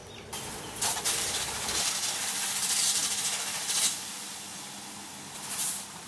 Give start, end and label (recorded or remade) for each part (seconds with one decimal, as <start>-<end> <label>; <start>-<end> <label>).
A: 0.0-3.0 remade; 3.0-3.5 recorded; 3.5-4.5 remade; 4.5-5.6 recorded; 5.6-6.1 remade